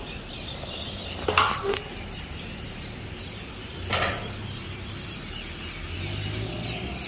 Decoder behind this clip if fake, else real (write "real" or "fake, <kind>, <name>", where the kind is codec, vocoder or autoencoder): real